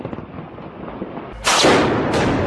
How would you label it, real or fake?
real